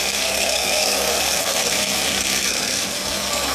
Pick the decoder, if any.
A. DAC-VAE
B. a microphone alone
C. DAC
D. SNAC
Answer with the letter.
D